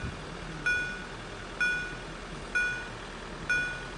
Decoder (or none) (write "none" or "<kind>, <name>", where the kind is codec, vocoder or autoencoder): none